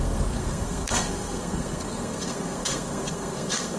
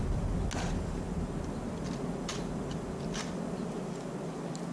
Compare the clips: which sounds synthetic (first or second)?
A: first